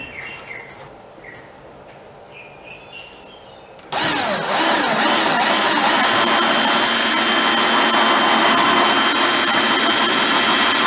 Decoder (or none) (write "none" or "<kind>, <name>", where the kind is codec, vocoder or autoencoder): none